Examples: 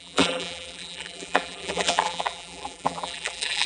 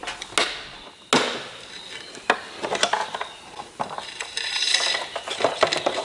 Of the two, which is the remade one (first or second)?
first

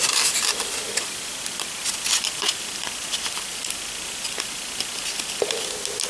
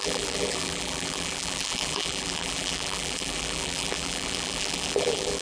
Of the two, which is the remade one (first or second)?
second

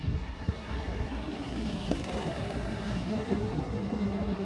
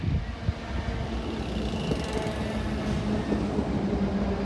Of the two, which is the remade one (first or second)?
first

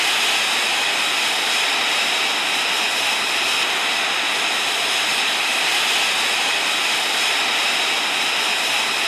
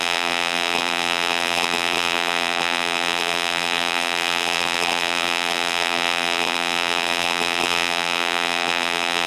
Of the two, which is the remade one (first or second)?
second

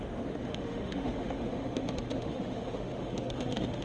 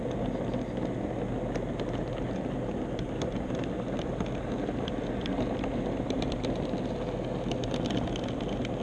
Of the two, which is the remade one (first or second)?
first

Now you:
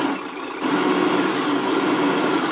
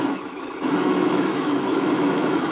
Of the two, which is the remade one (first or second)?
second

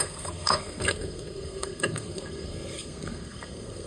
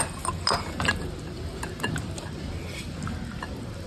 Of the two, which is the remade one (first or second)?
first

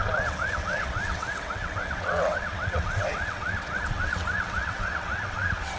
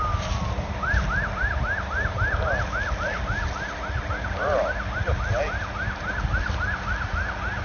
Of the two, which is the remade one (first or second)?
first